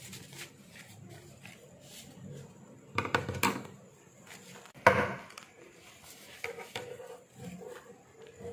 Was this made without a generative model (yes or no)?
yes